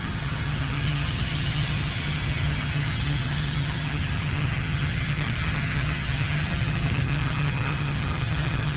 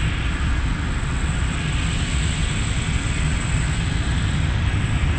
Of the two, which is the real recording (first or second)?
second